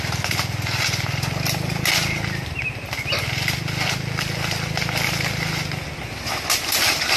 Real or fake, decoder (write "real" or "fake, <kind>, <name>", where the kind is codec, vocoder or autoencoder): real